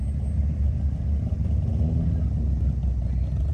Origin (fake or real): real